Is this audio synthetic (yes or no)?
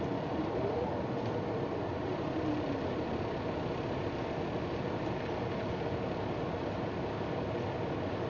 no